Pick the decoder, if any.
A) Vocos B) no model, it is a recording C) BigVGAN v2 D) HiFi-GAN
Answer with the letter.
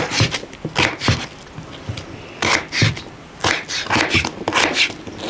B